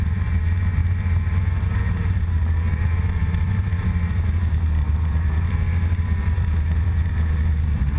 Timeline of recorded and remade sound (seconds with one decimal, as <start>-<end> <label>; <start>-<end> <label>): 0.0-8.0 remade